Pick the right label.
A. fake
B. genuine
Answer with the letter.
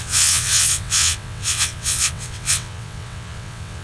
A